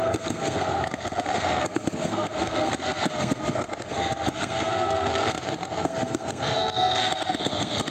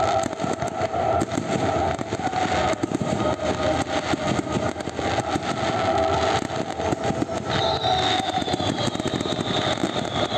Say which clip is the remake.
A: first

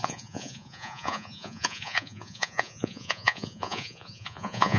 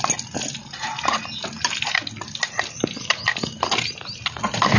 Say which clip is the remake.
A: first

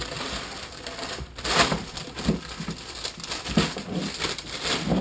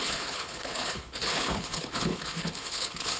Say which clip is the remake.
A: second